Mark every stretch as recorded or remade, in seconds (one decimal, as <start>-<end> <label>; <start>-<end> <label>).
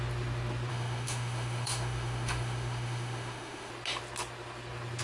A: 0.0-0.7 recorded; 0.7-3.7 remade; 3.7-5.0 recorded